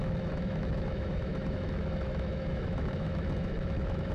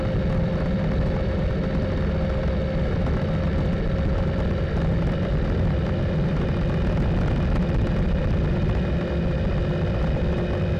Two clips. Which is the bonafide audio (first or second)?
second